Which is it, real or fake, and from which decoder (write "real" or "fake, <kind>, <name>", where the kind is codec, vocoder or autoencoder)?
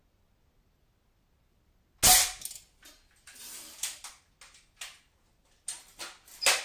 real